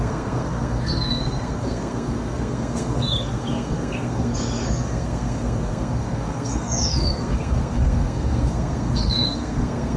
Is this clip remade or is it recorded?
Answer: remade